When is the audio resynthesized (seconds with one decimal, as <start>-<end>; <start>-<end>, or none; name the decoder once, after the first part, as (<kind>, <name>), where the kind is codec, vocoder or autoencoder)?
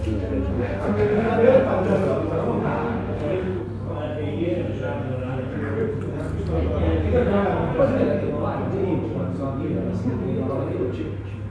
0.5-1.3 (autoencoder, DAC-VAE); 2.6-3.6